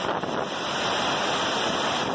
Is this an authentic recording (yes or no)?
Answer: yes